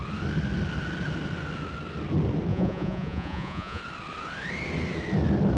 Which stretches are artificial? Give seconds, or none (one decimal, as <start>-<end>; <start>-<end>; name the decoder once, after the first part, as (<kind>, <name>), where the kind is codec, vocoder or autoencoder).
2.5-3.8 (vocoder, Vocos)

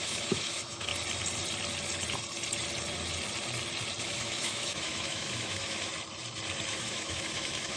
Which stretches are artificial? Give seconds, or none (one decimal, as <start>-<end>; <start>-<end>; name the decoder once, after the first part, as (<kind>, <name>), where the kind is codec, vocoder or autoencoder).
0.0-0.9 (autoencoder, DAC-VAE); 4.0-5.9; 6.7-7.8

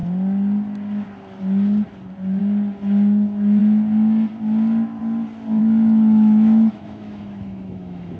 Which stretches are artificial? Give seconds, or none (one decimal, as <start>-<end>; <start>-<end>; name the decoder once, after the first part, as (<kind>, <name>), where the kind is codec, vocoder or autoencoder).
5.6-8.2 (autoencoder, DAC-VAE)

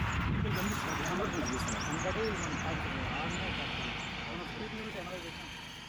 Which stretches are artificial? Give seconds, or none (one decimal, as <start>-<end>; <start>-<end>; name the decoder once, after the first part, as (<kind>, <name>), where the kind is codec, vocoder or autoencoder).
4.7-5.9 (vocoder, BigVGAN v2)